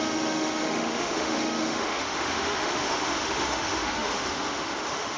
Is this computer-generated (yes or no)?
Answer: yes